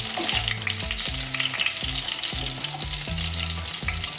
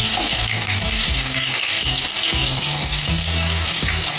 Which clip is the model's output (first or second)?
second